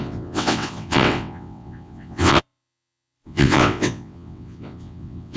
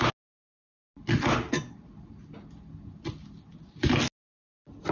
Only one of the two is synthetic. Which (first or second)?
first